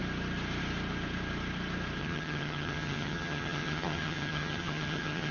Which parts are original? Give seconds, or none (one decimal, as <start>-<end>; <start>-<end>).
0.0-2.0